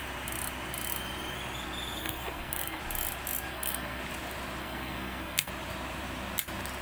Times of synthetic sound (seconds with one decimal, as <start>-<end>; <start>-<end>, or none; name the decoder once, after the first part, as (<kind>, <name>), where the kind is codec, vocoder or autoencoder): 2.0-2.8 (codec, SNAC); 3.5-4.0; 4.6-5.5